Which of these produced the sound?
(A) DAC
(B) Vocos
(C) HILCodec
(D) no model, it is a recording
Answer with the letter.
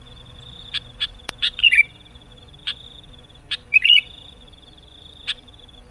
B